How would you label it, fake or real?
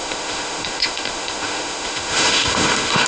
fake